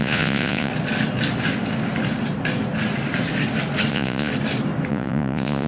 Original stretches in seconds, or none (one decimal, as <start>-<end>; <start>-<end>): 0.7-3.9; 4.3-4.9